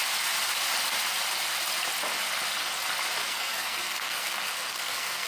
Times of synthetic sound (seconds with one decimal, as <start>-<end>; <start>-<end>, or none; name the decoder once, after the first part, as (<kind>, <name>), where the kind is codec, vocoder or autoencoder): 3.2-5.3 (codec, SNAC)